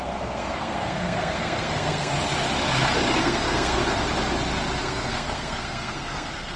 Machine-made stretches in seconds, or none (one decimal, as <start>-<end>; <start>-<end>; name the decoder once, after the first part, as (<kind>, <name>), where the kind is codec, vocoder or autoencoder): 0.0-2.1 (codec, SNAC); 3.2-3.8; 4.8-6.6